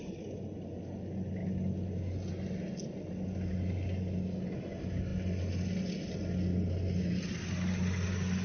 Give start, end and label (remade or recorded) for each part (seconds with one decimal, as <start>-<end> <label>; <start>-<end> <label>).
0.0-8.4 recorded